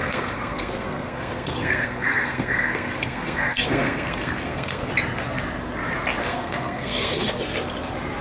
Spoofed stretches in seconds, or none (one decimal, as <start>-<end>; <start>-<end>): 0.0-4.9; 6.2-7.4